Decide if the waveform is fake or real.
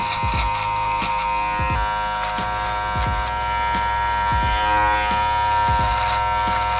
real